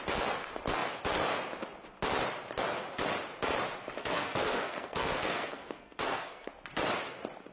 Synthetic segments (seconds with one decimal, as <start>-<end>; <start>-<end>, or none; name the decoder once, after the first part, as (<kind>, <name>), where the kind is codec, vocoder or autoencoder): 4.0-6.5 (codec, SNAC)

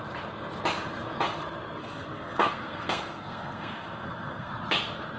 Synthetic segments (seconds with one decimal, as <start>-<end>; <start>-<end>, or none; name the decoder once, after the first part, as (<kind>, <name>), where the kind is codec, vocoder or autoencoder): 1.8-4.5 (codec, SNAC)

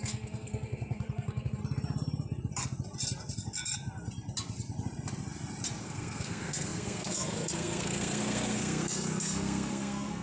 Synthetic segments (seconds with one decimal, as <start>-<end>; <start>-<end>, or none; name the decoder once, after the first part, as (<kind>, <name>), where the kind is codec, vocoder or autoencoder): 0.0-1.6 (codec, SNAC); 5.8-10.2

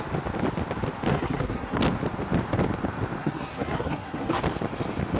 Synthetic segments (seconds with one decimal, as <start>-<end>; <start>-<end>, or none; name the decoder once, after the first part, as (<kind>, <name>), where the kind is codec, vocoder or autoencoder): 1.1-1.8 (codec, SNAC); 3.2-4.4

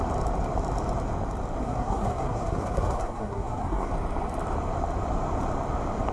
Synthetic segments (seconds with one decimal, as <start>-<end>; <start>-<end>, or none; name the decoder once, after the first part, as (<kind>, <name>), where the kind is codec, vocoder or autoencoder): 1.6-3.9 (codec, SNAC)

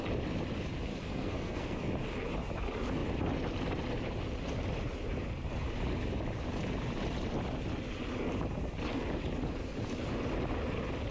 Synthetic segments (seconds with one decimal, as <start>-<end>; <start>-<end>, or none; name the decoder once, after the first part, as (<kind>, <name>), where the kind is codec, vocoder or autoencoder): 0.9-1.9 (codec, SNAC)

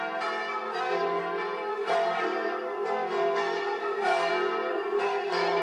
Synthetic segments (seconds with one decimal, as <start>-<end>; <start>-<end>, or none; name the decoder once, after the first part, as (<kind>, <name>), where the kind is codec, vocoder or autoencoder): 0.5-1.2 (codec, SNAC); 1.7-4.3; 4.7-5.6

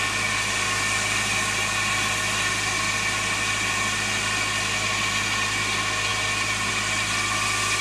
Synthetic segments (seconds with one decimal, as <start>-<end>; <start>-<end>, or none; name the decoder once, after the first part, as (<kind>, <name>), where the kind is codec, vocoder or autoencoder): none